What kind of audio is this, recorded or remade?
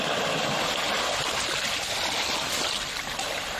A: recorded